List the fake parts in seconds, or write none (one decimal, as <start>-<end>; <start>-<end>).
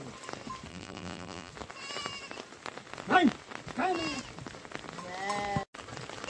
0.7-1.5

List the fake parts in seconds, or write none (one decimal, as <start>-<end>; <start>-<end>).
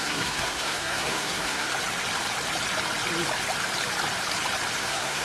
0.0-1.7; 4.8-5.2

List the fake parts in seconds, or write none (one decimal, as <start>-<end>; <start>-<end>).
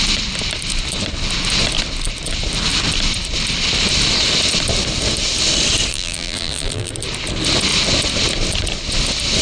5.9-6.9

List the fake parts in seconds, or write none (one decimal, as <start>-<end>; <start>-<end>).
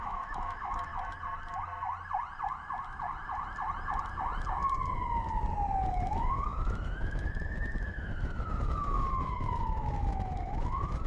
0.0-0.9; 5.9-11.1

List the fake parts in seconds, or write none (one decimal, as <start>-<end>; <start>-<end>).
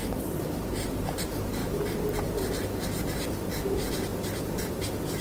0.0-1.6; 2.2-4.1; 4.7-5.2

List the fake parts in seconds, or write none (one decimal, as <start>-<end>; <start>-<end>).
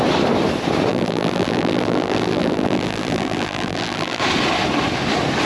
0.9-4.2